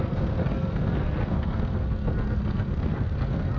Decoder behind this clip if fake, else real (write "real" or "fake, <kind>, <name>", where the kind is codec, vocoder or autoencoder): fake, codec, SNAC